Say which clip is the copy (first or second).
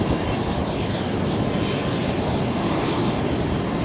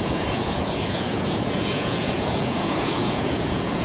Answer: second